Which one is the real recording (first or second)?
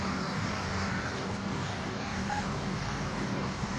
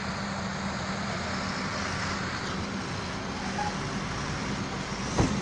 second